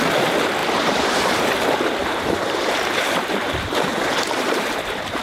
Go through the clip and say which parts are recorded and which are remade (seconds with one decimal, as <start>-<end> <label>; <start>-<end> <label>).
0.0-0.6 recorded; 0.6-1.5 remade; 1.5-2.0 recorded; 2.0-5.2 remade